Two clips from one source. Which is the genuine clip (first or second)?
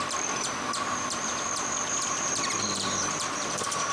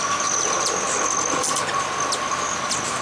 second